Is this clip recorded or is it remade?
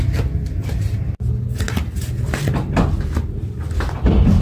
recorded